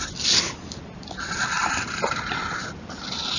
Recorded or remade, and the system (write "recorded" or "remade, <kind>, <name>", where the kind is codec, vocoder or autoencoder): recorded